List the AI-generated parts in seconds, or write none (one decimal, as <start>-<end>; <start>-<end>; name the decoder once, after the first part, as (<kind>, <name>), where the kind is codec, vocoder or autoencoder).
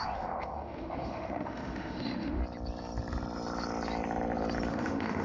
0.0-2.4 (autoencoder, DAC-VAE); 4.7-5.2